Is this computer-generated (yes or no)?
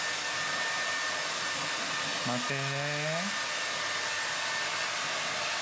no